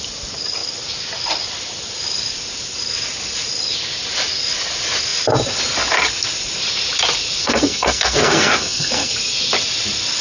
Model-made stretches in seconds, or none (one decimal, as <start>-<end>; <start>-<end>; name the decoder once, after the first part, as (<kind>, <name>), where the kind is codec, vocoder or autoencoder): 7.4-9.1 (codec, SNAC)